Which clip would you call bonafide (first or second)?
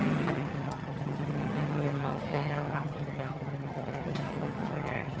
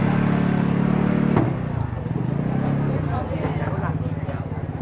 second